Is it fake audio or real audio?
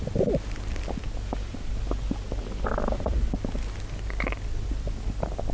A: real